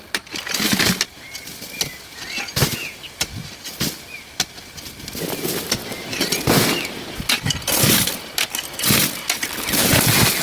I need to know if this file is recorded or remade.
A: recorded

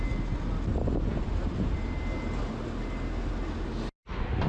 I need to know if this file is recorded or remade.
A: recorded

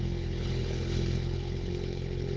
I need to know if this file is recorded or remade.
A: remade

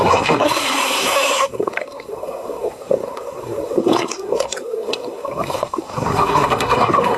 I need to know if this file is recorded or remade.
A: remade